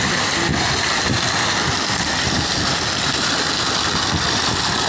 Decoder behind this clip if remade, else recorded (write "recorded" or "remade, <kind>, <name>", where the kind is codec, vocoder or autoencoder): recorded